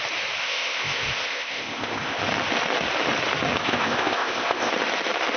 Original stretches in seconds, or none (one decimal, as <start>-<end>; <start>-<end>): 0.0-0.4; 2.2-3.6; 4.7-5.4